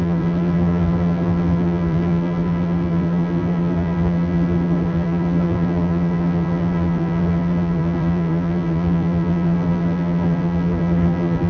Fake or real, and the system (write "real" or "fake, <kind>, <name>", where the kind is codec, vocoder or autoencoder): fake, vocoder, BigVGAN v2